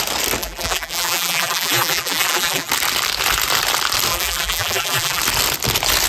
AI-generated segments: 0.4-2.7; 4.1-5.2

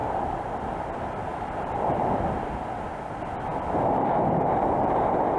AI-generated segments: 0.0-0.6; 1.3-2.7